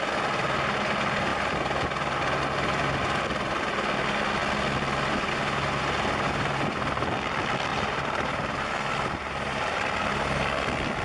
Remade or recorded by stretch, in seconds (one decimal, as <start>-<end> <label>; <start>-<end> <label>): 0.0-7.7 recorded; 7.7-9.8 remade; 9.8-11.0 recorded